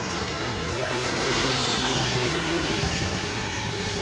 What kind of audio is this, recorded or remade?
remade